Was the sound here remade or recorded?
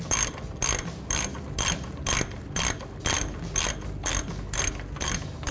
recorded